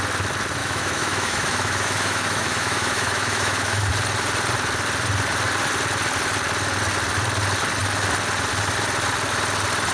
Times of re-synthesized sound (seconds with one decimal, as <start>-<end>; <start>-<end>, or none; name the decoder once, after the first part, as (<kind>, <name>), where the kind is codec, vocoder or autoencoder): 0.6-3.9 (autoencoder, DAC-VAE)